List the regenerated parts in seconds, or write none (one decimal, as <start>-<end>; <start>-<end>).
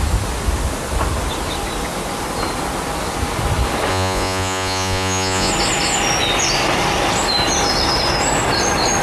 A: 3.9-5.5